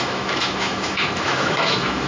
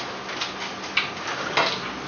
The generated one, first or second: first